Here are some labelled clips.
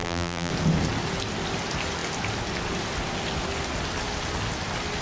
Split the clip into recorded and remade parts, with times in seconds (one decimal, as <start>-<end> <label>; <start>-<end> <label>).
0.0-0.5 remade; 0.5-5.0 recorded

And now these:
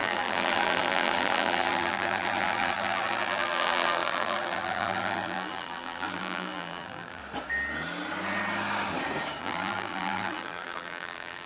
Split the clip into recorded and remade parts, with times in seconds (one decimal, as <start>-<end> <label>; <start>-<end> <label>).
0.0-7.2 remade; 7.2-9.4 recorded; 9.4-11.5 remade

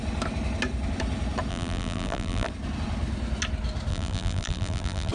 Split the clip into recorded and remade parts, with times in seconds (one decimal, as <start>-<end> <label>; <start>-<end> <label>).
0.0-1.5 recorded; 1.5-2.5 remade; 2.5-3.9 recorded; 3.9-5.1 remade

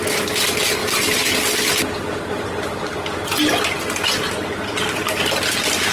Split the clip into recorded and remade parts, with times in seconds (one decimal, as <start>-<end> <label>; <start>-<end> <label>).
0.0-5.9 recorded

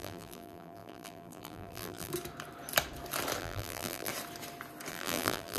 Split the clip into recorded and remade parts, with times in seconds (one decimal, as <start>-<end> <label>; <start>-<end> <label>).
0.0-2.1 remade; 2.1-3.4 recorded; 3.4-4.1 remade; 4.1-4.9 recorded; 4.9-5.6 remade

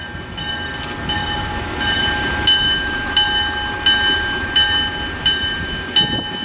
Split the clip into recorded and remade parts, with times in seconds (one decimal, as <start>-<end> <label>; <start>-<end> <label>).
0.0-6.4 recorded

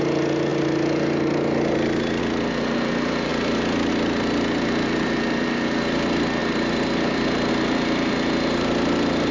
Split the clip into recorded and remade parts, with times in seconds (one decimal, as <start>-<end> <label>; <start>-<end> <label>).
0.0-9.3 remade